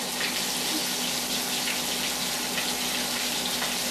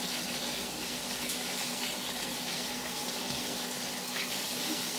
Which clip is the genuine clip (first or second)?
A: first